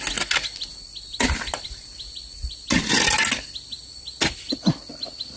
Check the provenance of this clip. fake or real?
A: real